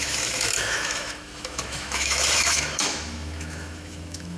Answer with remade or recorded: remade